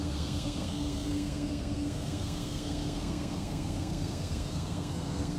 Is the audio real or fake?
fake